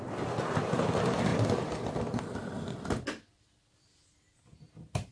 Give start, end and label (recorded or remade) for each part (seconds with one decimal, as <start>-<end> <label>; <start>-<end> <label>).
0.0-5.1 recorded